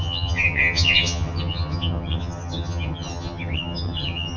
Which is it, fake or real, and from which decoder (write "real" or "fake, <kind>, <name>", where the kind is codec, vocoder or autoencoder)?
fake, vocoder, HiFi-GAN